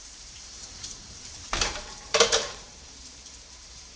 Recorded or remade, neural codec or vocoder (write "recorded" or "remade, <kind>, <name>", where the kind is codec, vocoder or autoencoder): remade, vocoder, BigVGAN v2